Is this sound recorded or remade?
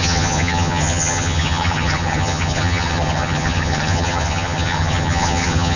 remade